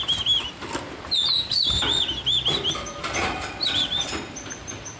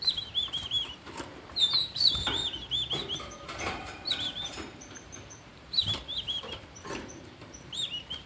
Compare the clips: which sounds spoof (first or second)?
second